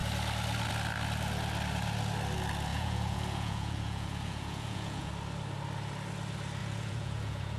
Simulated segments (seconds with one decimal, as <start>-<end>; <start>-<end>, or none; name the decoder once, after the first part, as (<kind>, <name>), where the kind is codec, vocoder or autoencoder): 2.7-5.1 (vocoder, Vocos); 6.6-7.6